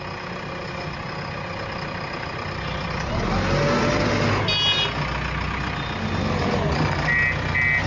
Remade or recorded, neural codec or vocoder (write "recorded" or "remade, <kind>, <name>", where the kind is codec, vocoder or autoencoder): recorded